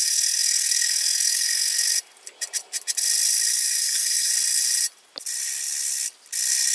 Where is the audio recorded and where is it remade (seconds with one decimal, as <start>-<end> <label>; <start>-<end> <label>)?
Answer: 0.0-1.8 remade; 1.8-3.5 recorded; 3.5-4.3 remade; 4.3-6.7 recorded